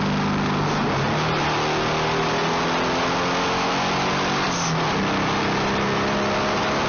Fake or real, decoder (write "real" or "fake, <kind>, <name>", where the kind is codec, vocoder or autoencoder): real